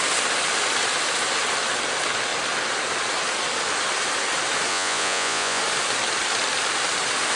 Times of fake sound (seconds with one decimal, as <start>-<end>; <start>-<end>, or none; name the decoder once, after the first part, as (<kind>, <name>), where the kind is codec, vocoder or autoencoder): 4.7-5.6 (vocoder, Vocos)